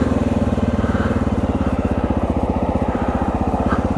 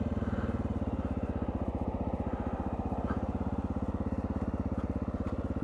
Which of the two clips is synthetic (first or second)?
first